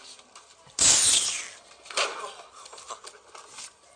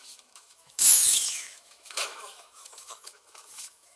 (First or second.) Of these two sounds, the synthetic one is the second